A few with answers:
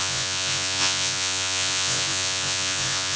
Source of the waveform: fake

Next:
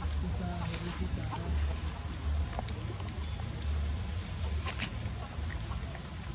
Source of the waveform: real